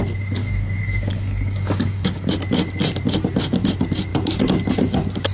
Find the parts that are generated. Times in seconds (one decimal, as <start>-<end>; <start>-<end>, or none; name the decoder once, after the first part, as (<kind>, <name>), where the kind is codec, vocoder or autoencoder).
0.4-2.3 (codec, DAC)